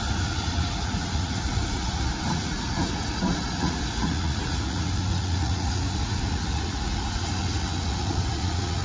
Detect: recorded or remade remade